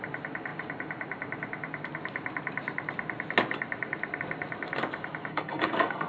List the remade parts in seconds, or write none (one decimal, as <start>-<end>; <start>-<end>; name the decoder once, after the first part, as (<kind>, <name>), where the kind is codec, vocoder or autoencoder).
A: 5.3-6.1 (codec, SNAC)